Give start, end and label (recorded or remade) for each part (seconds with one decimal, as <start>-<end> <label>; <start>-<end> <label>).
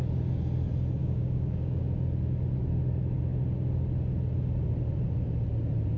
0.0-1.0 recorded; 1.0-1.8 remade; 1.8-6.0 recorded